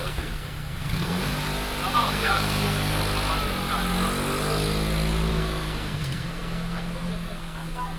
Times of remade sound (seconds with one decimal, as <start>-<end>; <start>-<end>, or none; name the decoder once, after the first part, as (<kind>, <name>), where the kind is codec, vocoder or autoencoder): 0.0-1.3 (codec, SNAC); 1.9-3.0; 5.3-8.0